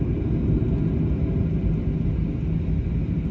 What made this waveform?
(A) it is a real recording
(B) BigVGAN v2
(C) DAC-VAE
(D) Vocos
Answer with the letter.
A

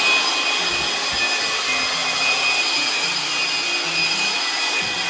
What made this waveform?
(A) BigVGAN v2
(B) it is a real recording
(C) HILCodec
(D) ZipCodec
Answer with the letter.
B